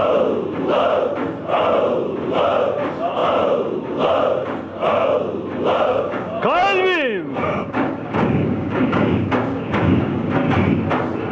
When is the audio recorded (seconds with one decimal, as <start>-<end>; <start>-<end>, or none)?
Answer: 0.0-5.9; 6.4-7.3; 10.3-11.3